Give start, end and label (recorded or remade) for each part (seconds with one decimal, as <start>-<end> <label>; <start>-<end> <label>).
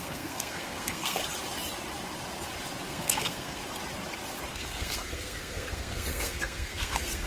0.0-1.2 remade; 1.2-2.9 recorded; 2.9-3.6 remade; 3.6-4.5 recorded; 4.5-7.3 remade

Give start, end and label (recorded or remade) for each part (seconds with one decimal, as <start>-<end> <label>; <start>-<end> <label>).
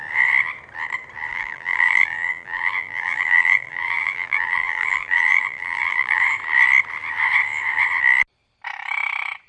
0.0-1.3 recorded; 1.3-6.2 remade; 6.2-9.5 recorded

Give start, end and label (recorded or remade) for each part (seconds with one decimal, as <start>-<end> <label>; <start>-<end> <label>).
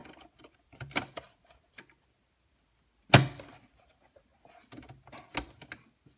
0.0-1.2 remade; 1.2-6.2 recorded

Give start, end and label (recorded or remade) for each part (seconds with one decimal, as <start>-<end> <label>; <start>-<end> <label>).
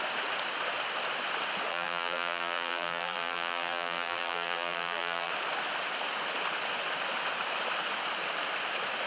0.0-1.7 recorded; 1.7-5.3 remade; 5.3-9.1 recorded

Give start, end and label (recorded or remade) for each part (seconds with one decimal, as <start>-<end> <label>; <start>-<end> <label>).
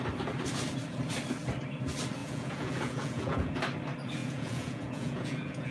0.0-2.2 recorded; 2.2-3.5 remade; 3.5-4.2 recorded; 4.2-5.7 remade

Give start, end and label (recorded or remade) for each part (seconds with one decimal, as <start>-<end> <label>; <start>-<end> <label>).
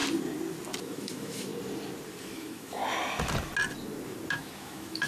0.0-0.8 recorded; 0.8-1.5 remade; 1.5-2.2 recorded; 2.2-2.8 remade; 2.8-4.3 recorded; 4.3-5.1 remade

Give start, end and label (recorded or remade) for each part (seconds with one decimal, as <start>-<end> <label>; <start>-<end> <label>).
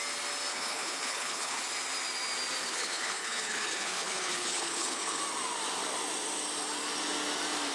0.0-0.5 recorded; 0.5-1.6 remade; 1.6-2.6 recorded; 2.6-5.2 remade; 5.2-7.7 recorded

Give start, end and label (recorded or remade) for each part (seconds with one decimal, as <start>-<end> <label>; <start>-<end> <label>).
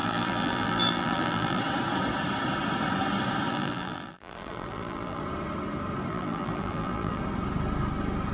0.0-1.6 remade; 1.6-3.5 recorded; 3.5-5.2 remade; 5.2-6.1 recorded; 6.1-7.2 remade; 7.2-8.3 recorded